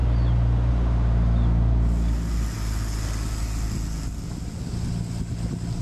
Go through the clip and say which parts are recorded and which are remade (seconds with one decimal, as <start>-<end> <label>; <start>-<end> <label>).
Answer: 0.0-5.8 recorded

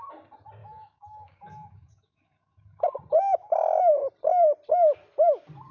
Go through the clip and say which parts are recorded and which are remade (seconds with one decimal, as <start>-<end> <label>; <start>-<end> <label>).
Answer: 0.0-0.6 recorded; 0.6-2.9 remade; 2.9-3.4 recorded; 3.4-3.9 remade; 3.9-5.7 recorded